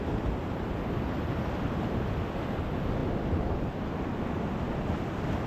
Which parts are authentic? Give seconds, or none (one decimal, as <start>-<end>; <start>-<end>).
0.0-5.5